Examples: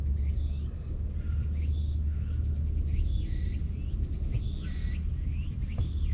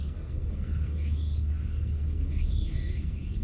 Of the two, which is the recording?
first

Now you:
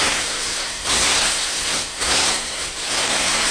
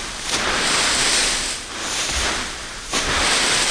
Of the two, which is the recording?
second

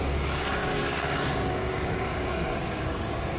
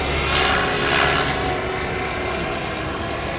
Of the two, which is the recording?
second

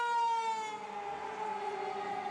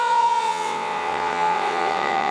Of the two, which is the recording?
first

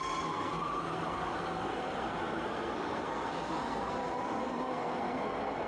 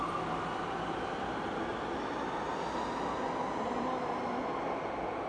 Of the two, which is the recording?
second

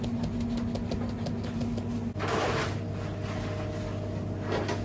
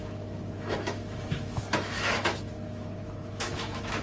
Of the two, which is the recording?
first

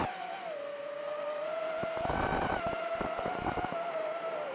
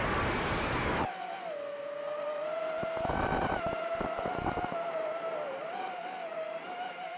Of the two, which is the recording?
second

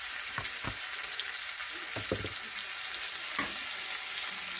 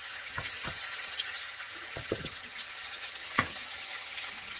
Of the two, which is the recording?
first